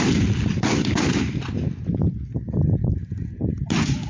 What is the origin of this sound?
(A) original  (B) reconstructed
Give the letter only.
A